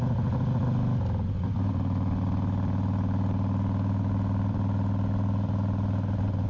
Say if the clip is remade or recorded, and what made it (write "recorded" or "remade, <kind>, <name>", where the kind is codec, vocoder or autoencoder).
recorded